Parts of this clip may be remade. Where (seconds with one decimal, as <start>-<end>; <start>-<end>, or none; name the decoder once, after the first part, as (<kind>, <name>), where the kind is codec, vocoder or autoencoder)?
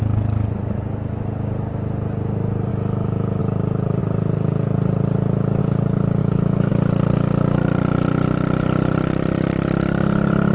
2.7-3.4 (autoencoder, DAC-VAE); 6.2-6.7